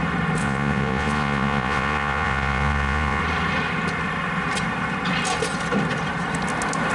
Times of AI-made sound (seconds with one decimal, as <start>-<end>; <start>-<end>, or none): 0.4-3.2